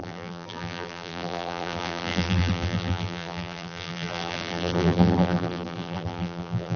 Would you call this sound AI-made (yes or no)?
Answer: yes